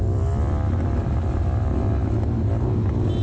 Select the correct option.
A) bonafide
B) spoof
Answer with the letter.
A